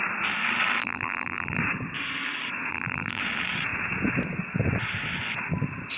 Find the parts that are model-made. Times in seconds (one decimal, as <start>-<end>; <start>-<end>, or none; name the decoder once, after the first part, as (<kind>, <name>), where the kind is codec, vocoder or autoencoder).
0.8-1.6 (vocoder, BigVGAN v2); 2.7-3.2